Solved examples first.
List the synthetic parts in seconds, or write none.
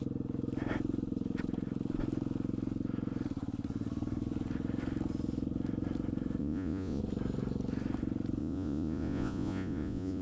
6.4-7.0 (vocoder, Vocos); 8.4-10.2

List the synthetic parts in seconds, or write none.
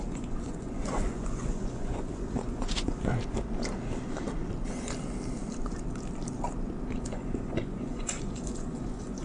0.0-3.1 (vocoder, Vocos); 7.0-9.2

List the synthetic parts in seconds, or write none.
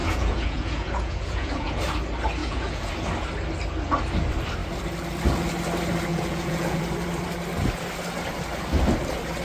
0.0-1.8 (vocoder, Vocos); 2.4-2.9; 6.1-6.8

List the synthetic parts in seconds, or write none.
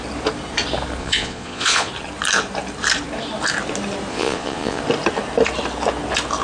1.0-1.9 (vocoder, Vocos); 4.1-4.8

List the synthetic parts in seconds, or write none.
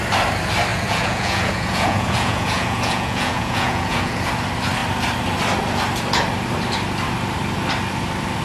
0.7-4.3 (vocoder, Vocos)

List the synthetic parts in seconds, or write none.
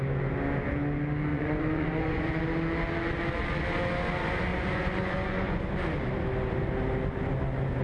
1.3-2.4 (vocoder, Vocos); 4.5-5.6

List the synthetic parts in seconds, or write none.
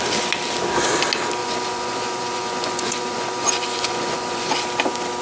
1.4-4.5 (vocoder, Vocos)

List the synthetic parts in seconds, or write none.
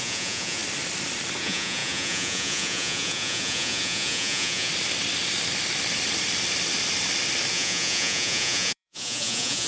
0.0-0.6 (vocoder, Vocos); 1.4-4.7; 7.5-9.7